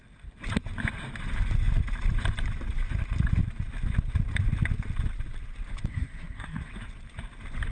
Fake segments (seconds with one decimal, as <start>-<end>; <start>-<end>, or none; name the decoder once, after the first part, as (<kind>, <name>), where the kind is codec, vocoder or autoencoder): 5.9-6.7 (codec, SNAC)

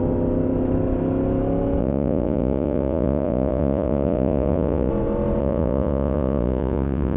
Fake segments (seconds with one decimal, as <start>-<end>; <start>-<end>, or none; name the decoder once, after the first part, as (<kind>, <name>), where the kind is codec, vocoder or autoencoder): 1.8-4.9 (vocoder, Vocos); 5.4-7.2

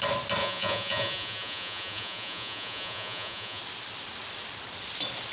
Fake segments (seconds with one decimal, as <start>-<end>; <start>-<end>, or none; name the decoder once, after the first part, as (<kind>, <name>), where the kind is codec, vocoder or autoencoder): 0.4-3.6 (vocoder, Vocos)

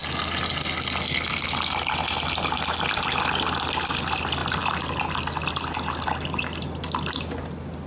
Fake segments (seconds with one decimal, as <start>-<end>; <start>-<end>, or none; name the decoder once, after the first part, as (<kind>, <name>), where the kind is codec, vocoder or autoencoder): 4.4-5.0 (vocoder, BigVGAN v2)

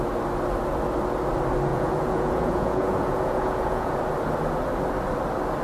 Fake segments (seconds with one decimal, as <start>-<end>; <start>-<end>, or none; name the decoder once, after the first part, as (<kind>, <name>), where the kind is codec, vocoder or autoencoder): 1.7-4.0 (vocoder, Vocos)